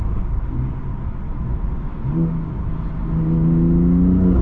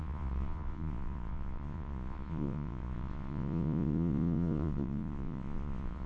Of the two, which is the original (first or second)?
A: first